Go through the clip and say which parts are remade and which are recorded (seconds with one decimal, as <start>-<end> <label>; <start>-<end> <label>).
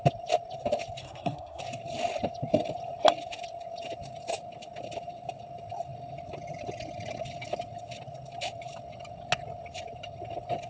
0.0-1.0 recorded; 1.0-1.6 remade; 1.6-10.7 recorded